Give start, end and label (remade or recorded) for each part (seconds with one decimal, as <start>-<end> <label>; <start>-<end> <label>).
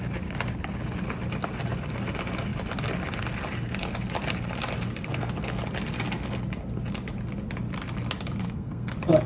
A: 0.0-5.1 recorded; 5.1-5.6 remade; 5.6-8.4 recorded; 8.4-8.9 remade; 8.9-9.3 recorded